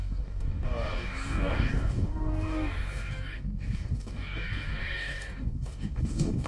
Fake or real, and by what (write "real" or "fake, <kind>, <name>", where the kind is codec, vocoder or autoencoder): fake, codec, DAC